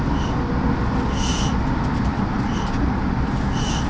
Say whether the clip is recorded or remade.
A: recorded